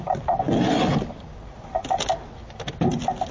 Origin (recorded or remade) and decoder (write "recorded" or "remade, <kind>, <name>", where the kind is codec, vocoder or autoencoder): recorded